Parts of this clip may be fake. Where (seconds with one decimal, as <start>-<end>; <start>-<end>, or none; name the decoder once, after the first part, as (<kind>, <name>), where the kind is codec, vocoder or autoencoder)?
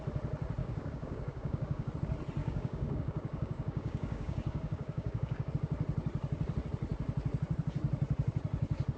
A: 0.6-1.9 (codec, DAC); 2.4-5.5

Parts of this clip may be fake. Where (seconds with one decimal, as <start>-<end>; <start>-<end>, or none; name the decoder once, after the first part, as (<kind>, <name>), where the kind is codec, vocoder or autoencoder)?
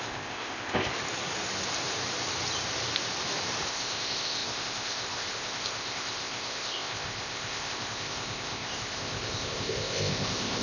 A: 0.0-0.9 (codec, ZipCodec); 3.7-10.6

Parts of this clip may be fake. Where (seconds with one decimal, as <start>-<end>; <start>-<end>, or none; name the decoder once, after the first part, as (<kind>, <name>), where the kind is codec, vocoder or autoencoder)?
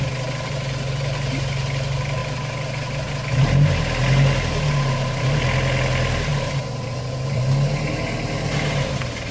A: none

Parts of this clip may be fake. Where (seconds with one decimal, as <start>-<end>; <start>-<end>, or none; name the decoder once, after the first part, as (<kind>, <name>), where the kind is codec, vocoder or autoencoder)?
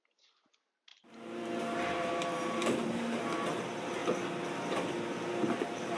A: 0.0-4.0 (vocoder, BigVGAN v2); 5.3-6.0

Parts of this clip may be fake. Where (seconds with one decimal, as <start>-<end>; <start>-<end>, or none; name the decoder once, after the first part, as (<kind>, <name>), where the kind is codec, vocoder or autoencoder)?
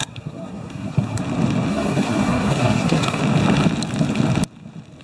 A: 0.0-1.2 (codec, SNAC); 1.7-3.2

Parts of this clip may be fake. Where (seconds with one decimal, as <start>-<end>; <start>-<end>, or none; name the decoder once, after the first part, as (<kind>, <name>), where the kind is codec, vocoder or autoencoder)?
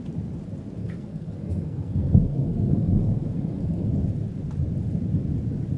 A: 0.8-3.9 (codec, SNAC)